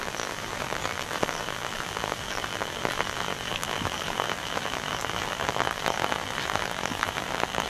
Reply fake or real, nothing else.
fake